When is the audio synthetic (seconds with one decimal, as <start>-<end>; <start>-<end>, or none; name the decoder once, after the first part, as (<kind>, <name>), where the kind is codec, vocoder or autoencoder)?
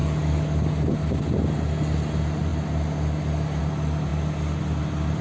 0.0-0.7 (codec, DAC)